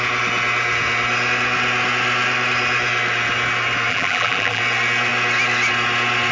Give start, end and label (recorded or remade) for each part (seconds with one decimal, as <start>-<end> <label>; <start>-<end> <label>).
0.0-3.9 recorded; 3.9-4.6 remade; 4.6-6.3 recorded